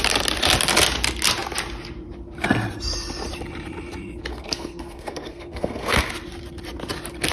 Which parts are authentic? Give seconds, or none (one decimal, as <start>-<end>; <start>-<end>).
0.0-4.3; 6.1-7.3